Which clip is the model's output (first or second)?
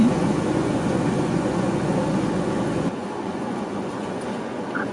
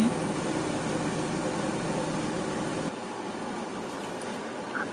first